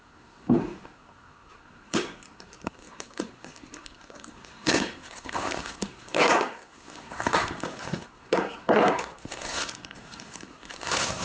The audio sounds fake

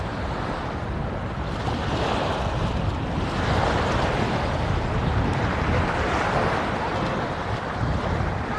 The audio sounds real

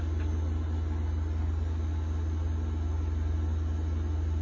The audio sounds real